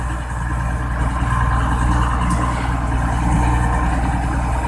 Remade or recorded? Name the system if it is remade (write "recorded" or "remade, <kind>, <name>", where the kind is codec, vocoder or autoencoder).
recorded